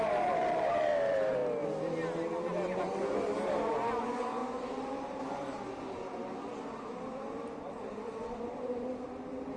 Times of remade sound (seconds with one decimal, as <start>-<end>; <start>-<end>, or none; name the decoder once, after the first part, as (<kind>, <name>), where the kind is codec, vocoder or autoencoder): 0.0-1.4 (vocoder, BigVGAN v2); 2.8-8.9